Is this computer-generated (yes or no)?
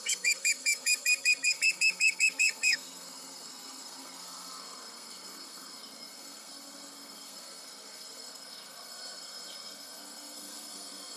yes